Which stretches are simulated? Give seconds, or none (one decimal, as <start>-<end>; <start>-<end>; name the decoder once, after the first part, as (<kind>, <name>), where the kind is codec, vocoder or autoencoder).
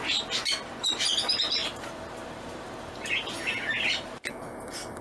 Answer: 1.6-3.1 (vocoder, BigVGAN v2)